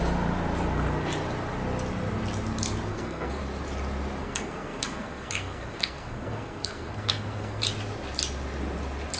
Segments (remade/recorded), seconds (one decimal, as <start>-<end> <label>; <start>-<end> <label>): 0.0-2.9 recorded; 2.9-3.4 remade; 3.4-4.2 recorded; 4.2-7.6 remade; 7.6-9.2 recorded